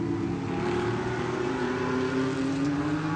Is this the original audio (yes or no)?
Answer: yes